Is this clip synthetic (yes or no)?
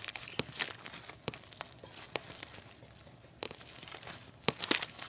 no